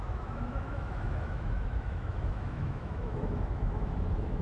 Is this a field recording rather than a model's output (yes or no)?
no